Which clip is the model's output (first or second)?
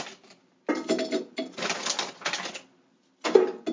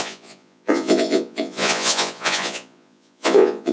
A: second